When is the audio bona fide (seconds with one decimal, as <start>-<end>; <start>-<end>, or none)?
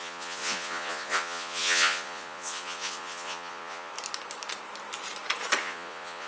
3.9-5.6